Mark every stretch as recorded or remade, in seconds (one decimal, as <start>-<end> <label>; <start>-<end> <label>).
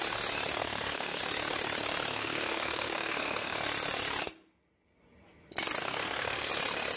0.0-0.6 recorded; 0.6-1.2 remade; 1.2-2.1 recorded; 2.1-3.6 remade; 3.6-5.8 recorded; 5.8-6.5 remade; 6.5-7.0 recorded